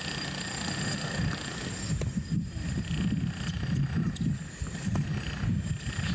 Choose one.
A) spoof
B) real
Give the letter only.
B